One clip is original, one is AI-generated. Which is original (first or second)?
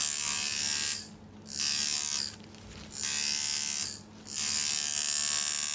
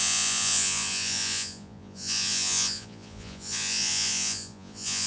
first